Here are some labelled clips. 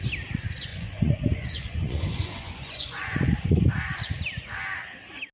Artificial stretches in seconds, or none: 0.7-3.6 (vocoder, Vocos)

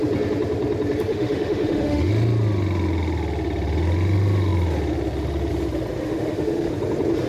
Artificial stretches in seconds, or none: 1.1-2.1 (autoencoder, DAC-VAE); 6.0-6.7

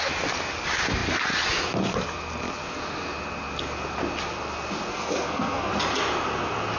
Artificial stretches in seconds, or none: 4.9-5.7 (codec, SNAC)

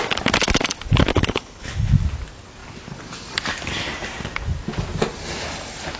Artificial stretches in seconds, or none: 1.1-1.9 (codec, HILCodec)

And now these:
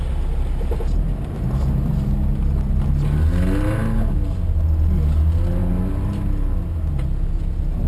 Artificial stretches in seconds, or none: none

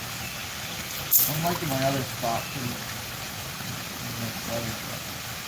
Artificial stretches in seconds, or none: none